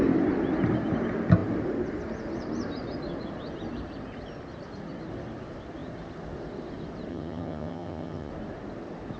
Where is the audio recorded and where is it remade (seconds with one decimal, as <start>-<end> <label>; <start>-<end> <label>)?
0.0-7.1 recorded; 7.1-8.3 remade; 8.3-9.2 recorded